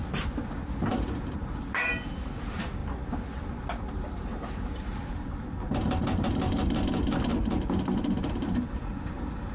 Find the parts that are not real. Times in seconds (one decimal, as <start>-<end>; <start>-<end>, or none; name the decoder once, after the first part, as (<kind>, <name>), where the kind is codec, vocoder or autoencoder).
0.8-2.8 (vocoder, BigVGAN v2); 4.0-7.3; 8.3-9.5